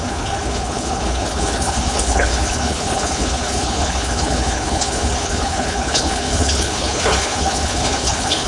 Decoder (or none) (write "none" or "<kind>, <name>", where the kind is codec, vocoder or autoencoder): codec, HILCodec